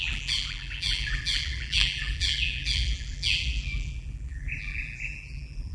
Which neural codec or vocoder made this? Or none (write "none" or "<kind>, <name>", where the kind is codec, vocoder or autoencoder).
vocoder, BigVGAN v2